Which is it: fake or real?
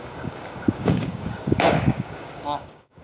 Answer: fake